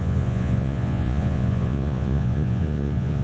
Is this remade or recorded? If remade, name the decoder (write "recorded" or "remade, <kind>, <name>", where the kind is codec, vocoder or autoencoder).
remade, vocoder, Vocos